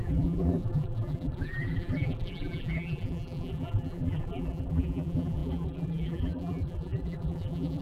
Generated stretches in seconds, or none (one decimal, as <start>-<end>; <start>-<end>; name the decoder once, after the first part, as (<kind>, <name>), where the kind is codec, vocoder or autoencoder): 0.0-7.8 (vocoder, BigVGAN v2)